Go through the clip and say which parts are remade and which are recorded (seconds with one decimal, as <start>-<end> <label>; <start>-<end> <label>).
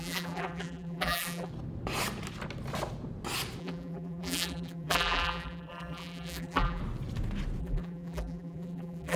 0.0-1.5 remade; 1.5-3.6 recorded; 3.6-6.8 remade; 6.8-7.6 recorded; 7.6-9.2 remade